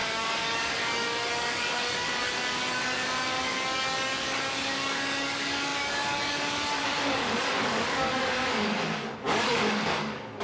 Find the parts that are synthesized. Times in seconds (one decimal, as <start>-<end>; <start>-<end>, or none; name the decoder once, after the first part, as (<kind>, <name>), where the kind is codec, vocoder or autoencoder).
0.0-10.4 (codec, DAC)